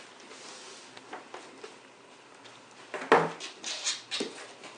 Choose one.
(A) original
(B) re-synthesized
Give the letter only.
A